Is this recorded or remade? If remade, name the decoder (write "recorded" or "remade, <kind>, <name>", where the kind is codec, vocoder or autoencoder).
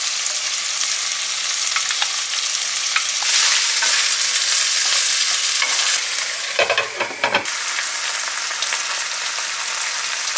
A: recorded